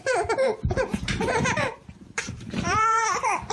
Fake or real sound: fake